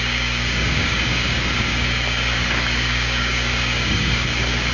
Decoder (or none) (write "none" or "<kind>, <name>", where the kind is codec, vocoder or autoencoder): codec, DAC